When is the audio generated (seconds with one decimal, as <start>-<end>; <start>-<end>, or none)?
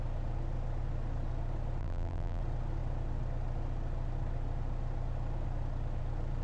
1.8-2.4